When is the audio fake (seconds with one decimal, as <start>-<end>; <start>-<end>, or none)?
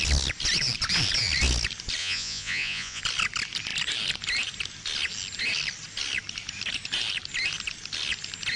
2.0-3.0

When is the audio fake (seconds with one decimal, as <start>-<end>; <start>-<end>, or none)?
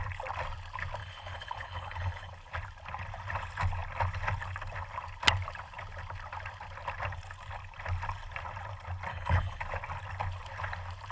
1.0-2.3; 9.1-9.6